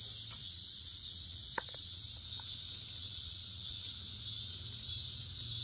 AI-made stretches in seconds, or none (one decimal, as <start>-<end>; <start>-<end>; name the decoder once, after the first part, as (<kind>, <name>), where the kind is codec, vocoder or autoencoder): 0.4-2.0 (vocoder, Vocos); 3.0-3.9